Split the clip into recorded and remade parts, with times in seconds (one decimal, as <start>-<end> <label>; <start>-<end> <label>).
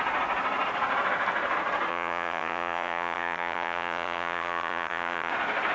0.0-1.9 recorded; 1.9-5.3 remade; 5.3-5.7 recorded